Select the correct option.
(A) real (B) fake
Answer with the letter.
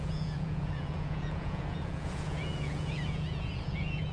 B